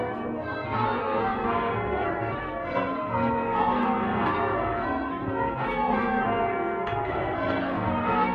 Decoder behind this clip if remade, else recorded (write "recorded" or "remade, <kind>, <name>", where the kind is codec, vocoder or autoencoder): remade, codec, SNAC